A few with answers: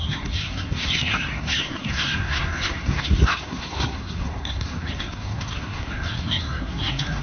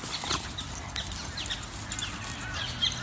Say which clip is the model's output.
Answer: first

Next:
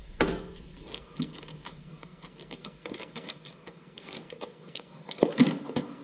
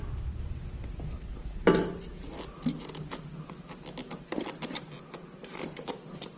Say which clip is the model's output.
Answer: first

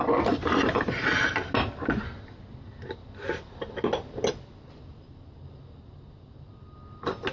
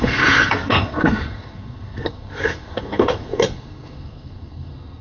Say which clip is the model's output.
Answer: second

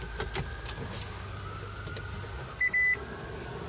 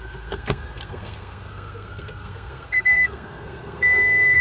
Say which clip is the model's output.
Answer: second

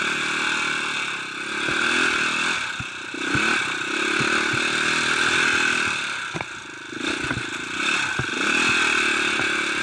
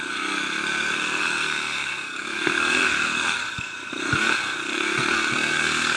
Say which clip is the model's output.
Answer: second